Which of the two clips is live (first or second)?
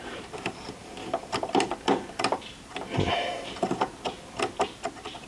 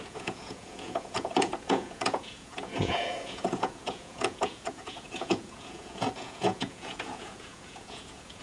first